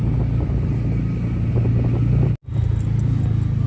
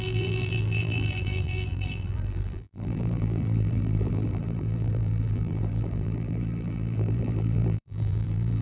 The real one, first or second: first